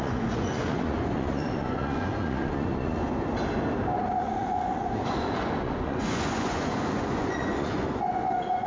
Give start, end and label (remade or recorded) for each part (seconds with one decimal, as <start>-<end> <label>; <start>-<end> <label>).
0.0-3.0 remade; 3.0-4.0 recorded; 4.0-8.7 remade